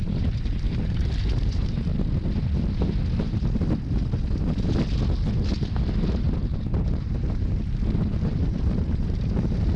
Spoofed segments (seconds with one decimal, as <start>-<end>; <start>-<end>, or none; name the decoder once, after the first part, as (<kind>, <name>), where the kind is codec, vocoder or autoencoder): 0.0-1.9 (vocoder, BigVGAN v2); 6.0-9.8